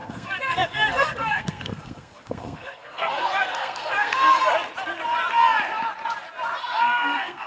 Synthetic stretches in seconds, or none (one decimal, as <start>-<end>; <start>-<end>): 0.0-4.4; 6.6-7.5